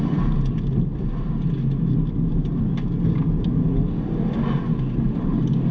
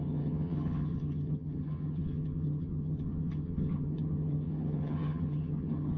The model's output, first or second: second